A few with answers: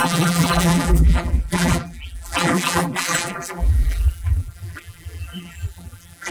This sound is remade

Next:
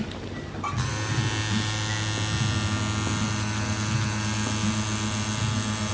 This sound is recorded